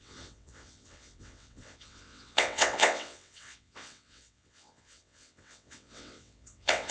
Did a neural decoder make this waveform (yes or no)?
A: yes